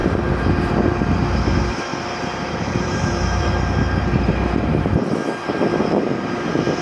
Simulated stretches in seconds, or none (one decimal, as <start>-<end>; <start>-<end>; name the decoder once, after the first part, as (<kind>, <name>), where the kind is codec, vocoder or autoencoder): 1.9-4.9 (vocoder, BigVGAN v2)